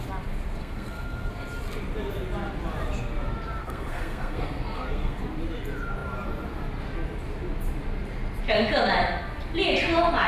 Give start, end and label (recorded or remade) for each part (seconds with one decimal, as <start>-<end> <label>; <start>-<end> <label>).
0.0-0.6 recorded; 0.6-1.3 remade; 1.3-3.6 recorded; 3.6-5.2 remade; 5.2-10.3 recorded